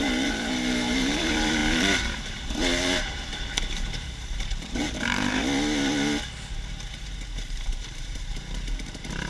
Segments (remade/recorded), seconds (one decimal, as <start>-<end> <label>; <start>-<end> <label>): 0.0-5.4 remade; 5.4-6.7 recorded; 6.7-9.3 remade